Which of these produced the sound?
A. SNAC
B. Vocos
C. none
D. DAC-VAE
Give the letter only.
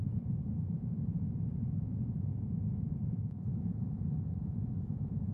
B